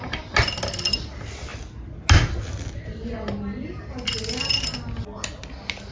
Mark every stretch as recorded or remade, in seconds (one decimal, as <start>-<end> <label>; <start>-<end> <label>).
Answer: 0.0-5.9 recorded